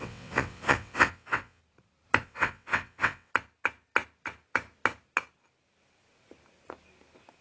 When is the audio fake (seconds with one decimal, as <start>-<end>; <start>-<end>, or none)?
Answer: 0.0-1.6; 2.2-3.3